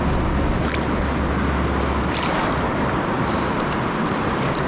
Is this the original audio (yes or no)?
yes